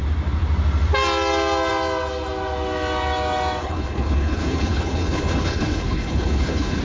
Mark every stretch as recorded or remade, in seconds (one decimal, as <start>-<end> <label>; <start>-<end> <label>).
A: 0.0-3.6 recorded; 3.6-6.8 remade